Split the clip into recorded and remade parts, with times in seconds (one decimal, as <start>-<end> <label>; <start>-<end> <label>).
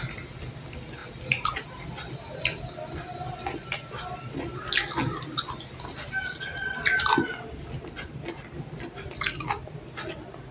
0.0-10.5 recorded